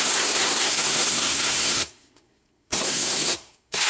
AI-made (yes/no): yes